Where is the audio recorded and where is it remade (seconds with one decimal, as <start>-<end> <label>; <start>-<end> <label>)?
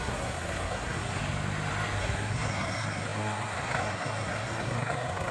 0.0-1.2 remade; 1.2-2.0 recorded; 2.0-5.3 remade